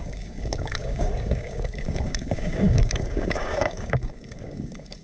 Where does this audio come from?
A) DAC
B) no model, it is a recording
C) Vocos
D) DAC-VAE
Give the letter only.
A